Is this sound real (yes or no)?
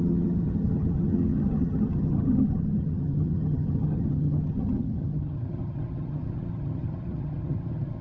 no